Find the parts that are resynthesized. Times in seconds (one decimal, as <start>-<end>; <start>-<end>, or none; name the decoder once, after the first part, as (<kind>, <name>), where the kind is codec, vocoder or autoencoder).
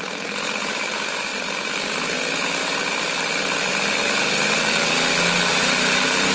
none